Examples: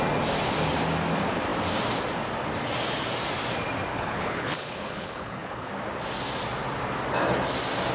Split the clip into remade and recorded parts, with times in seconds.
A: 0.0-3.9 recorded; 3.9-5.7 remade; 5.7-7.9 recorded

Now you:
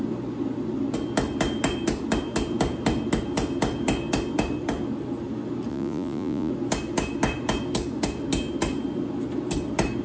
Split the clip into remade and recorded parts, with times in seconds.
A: 0.0-5.7 recorded; 5.7-6.5 remade; 6.5-10.0 recorded

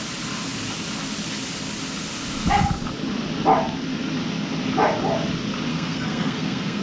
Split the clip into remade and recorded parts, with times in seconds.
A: 0.0-5.7 recorded; 5.7-6.8 remade

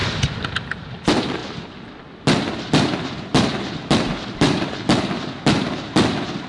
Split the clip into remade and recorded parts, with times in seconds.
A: 0.0-0.9 remade; 0.9-1.4 recorded; 1.4-1.9 remade; 1.9-3.3 recorded; 3.3-4.7 remade; 4.7-6.5 recorded

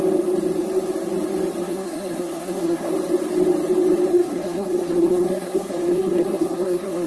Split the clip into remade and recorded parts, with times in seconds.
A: 0.0-1.6 recorded; 1.6-2.9 remade; 2.9-4.1 recorded; 4.1-7.1 remade

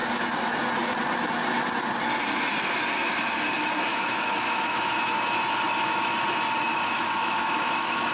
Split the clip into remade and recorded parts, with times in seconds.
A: 0.0-3.9 recorded; 3.9-4.9 remade; 4.9-6.7 recorded; 6.7-8.1 remade

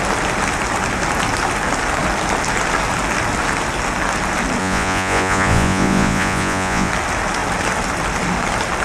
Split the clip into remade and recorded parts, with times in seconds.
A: 0.0-4.6 recorded; 4.6-6.9 remade; 6.9-8.8 recorded

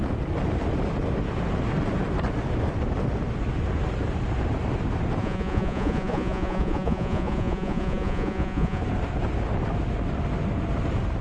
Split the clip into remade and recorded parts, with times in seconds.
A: 0.0-5.2 recorded; 5.2-8.8 remade; 8.8-11.2 recorded